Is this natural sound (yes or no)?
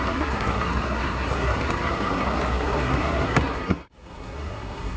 no